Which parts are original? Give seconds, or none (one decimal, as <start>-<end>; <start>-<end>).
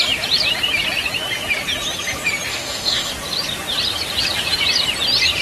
0.0-2.5; 3.1-5.4